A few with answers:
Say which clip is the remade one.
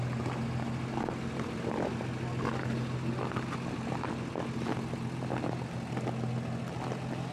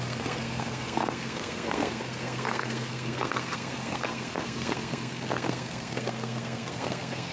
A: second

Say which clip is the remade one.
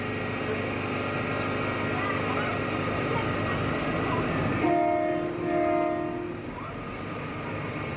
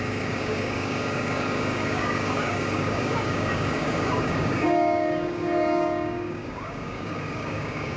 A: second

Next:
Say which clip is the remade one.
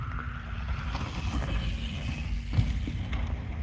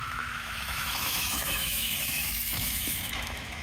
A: second